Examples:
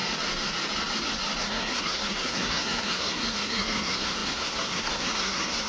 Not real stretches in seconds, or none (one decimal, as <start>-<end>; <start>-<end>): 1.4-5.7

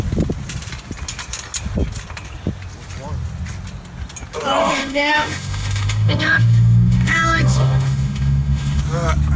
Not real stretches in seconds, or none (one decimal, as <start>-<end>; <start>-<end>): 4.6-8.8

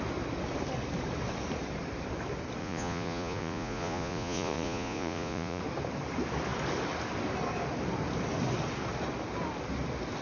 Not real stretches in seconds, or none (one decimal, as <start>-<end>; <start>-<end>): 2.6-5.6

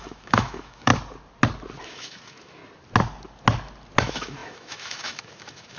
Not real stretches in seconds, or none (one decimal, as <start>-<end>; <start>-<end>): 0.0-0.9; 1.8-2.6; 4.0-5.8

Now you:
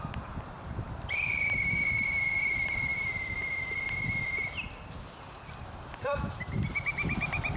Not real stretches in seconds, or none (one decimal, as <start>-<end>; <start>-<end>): 0.0-2.9; 5.2-7.6

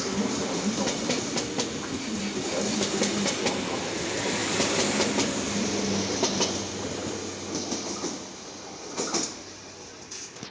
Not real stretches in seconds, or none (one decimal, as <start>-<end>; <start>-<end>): none

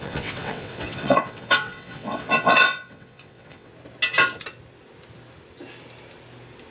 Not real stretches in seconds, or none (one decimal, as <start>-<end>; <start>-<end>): 0.0-3.7

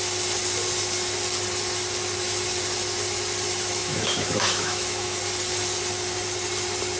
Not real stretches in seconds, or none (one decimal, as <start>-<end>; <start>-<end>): 3.8-5.2